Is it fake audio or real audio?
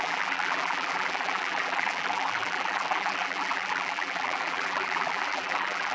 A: fake